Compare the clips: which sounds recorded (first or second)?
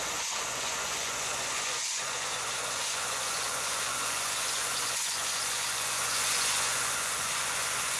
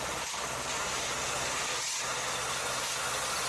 second